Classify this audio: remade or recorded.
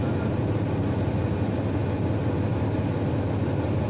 recorded